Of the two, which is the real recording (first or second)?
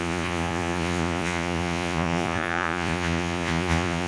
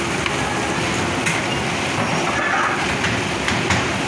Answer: second